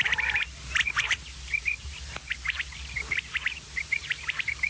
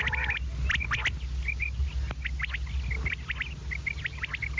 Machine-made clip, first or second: first